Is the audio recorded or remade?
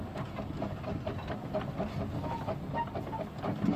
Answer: recorded